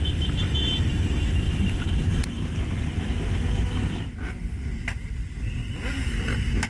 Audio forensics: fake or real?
real